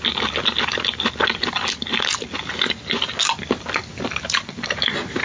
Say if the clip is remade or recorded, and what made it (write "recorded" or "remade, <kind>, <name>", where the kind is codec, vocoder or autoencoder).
recorded